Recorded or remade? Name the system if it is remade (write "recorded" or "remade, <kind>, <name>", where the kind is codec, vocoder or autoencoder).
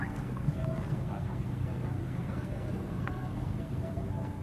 remade, codec, SNAC